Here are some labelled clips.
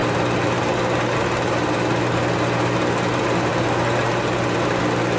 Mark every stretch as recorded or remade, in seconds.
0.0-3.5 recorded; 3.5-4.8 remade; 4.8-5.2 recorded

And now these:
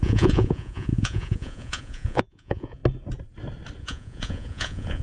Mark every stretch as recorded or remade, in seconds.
0.0-2.8 remade; 2.8-3.8 recorded; 3.8-5.0 remade

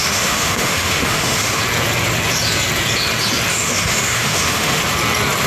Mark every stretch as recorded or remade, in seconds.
0.0-1.6 remade; 1.6-3.5 recorded; 3.5-4.8 remade; 4.8-5.5 recorded

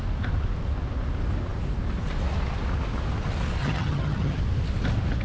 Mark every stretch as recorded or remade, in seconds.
0.0-3.6 recorded; 3.6-4.4 remade; 4.4-5.2 recorded

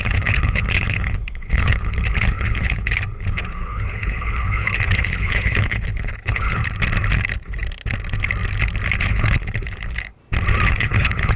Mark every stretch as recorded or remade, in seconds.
0.0-6.6 remade; 6.6-9.0 recorded; 9.0-10.2 remade; 10.2-10.7 recorded; 10.7-11.4 remade

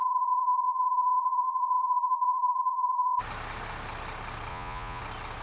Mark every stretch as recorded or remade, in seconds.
0.0-3.2 remade; 3.2-4.5 recorded; 4.5-5.0 remade; 5.0-5.4 recorded